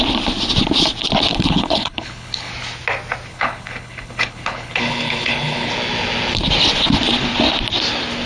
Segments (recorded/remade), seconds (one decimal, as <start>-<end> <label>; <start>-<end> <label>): 0.0-1.3 recorded; 1.3-2.5 remade; 2.5-3.3 recorded; 3.3-5.7 remade; 5.7-8.3 recorded